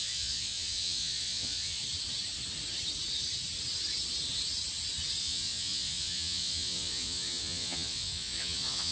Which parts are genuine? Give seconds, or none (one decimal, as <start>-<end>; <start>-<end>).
1.8-5.2